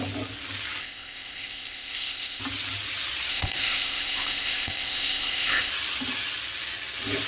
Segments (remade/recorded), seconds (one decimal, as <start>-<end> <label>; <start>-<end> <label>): 0.0-0.8 recorded; 0.8-2.4 remade; 2.4-3.3 recorded; 3.3-5.7 remade; 5.7-7.3 recorded